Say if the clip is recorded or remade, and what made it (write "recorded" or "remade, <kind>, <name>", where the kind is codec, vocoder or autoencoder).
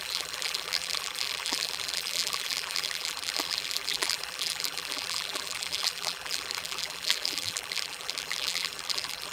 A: remade, vocoder, BigVGAN v2